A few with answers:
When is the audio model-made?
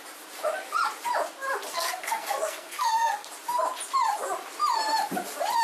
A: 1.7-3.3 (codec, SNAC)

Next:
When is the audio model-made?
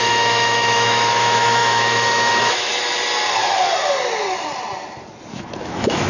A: 0.0-2.7 (autoencoder, DAC-VAE); 5.3-6.1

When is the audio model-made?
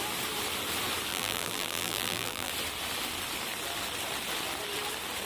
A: 1.1-2.5 (vocoder, BigVGAN v2)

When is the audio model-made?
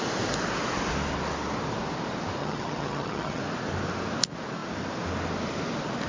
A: 2.4-3.4 (vocoder, HiFi-GAN)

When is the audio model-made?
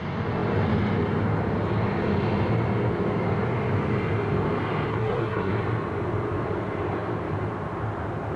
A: 4.9-5.6 (codec, SNAC)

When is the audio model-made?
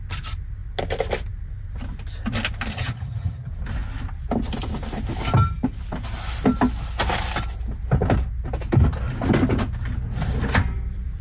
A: 2.7-3.5 (vocoder, HiFi-GAN)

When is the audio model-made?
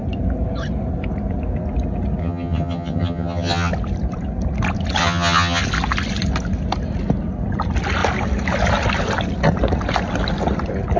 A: 2.2-3.7 (vocoder, HiFi-GAN); 5.0-5.6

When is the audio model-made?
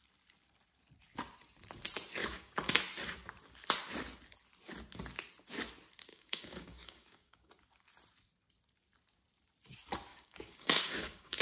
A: 2.2-2.8 (codec, DAC); 6.1-7.5; 10.1-11.4